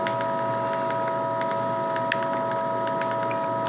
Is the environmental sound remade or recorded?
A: recorded